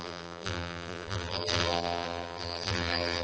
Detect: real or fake fake